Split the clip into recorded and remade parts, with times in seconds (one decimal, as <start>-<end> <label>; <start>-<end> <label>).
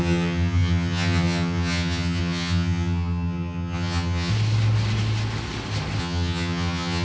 0.0-4.3 remade; 4.3-6.0 recorded; 6.0-7.0 remade